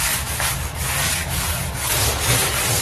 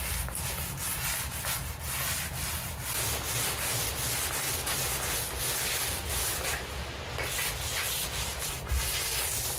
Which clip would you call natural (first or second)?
second